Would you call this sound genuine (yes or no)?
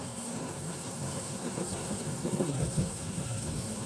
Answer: no